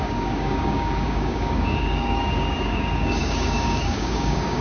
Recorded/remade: remade